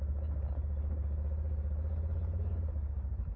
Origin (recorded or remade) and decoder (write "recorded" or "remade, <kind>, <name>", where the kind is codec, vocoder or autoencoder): recorded